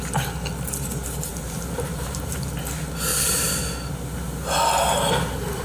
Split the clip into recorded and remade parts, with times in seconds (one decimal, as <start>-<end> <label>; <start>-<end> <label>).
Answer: 0.0-1.3 recorded; 1.3-2.5 remade; 2.5-3.1 recorded; 3.1-3.6 remade; 3.6-5.6 recorded